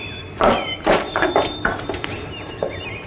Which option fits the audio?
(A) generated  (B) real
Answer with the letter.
A